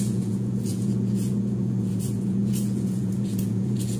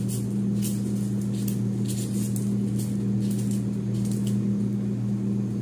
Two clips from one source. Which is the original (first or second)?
second